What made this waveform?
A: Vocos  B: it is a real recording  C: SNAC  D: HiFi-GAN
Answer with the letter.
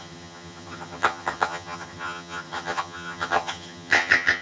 D